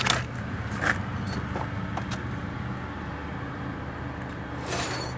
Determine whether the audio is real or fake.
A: real